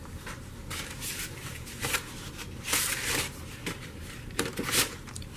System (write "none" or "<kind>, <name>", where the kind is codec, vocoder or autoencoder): vocoder, BigVGAN v2